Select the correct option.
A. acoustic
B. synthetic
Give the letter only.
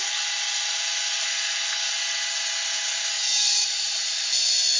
A